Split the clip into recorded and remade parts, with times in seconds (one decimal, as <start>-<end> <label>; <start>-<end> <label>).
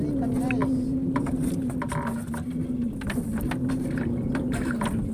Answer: 0.0-5.1 recorded